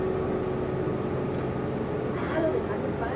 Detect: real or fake real